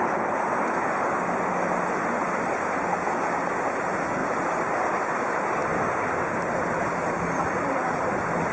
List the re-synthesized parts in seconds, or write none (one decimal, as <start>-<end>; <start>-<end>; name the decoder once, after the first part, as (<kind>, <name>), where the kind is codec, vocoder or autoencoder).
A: none